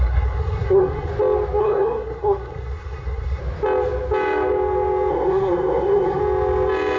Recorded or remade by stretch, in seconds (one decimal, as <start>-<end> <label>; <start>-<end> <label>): 0.0-1.1 remade; 1.1-1.6 recorded; 1.6-3.4 remade; 3.4-5.1 recorded; 5.1-6.2 remade; 6.2-7.0 recorded

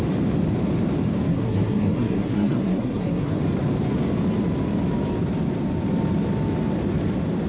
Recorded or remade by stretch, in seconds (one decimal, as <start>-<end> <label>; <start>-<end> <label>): 0.0-1.3 recorded; 1.3-3.4 remade; 3.4-7.5 recorded

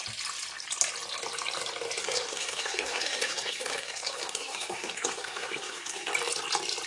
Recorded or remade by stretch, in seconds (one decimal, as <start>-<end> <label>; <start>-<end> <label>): 0.0-2.0 recorded; 2.0-6.1 remade; 6.1-6.9 recorded

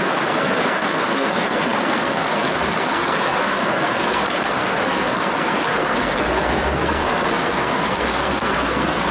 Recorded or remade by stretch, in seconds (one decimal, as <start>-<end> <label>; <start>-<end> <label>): 0.0-9.1 remade